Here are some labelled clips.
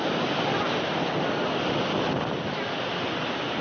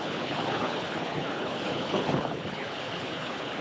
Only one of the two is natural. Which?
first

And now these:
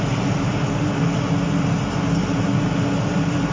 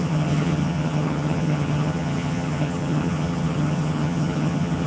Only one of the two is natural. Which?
first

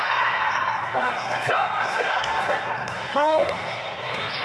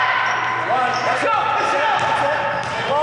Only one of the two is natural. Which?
second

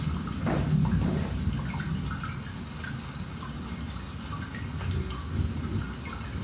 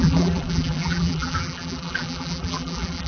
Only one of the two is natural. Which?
first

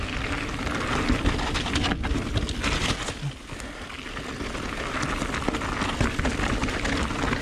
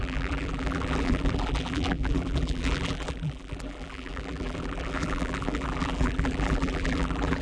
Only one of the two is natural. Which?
first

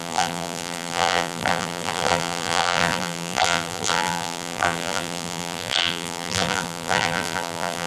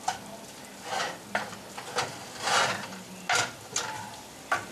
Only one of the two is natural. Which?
second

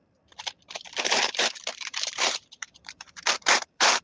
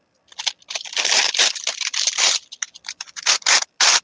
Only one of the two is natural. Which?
second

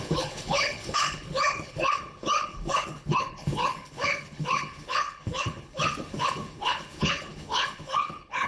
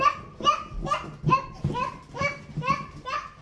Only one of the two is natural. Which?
second